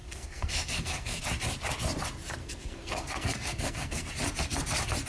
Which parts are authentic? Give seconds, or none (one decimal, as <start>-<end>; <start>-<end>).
1.2-2.4; 4.1-5.1